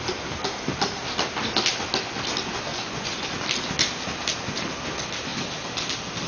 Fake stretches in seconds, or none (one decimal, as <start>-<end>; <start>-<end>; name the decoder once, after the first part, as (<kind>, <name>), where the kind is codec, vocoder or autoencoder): 2.7-3.3 (vocoder, Vocos)